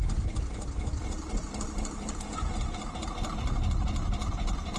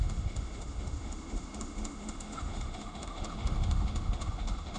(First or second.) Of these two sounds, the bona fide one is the first